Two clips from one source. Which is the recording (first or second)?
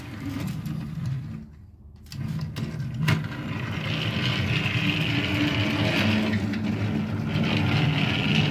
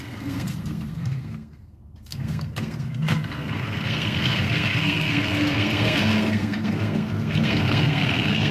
first